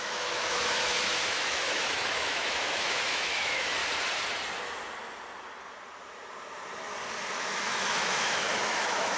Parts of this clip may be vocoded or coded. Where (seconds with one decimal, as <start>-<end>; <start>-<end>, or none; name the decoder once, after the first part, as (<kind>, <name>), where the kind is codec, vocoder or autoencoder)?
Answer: 0.0-3.8 (autoencoder, DAC-VAE); 7.3-9.2